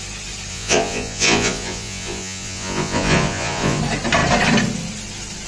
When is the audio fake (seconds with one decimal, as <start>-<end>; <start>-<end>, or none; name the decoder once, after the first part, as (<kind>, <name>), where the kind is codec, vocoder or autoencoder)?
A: 0.5-3.8 (vocoder, Vocos)